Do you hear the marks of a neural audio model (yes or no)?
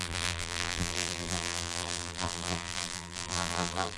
yes